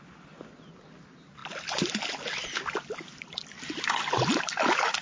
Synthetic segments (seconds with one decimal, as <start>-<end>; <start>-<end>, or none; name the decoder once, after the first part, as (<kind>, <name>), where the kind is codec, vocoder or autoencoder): none